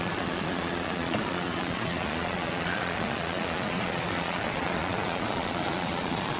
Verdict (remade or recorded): remade